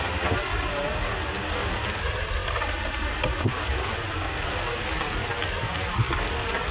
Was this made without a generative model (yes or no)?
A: yes